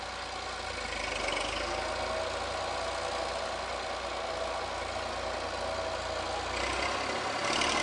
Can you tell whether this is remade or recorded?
recorded